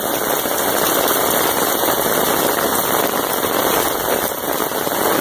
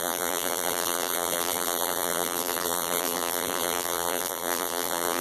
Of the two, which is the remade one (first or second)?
second